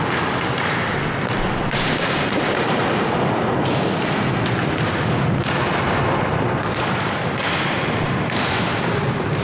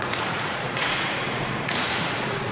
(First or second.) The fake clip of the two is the second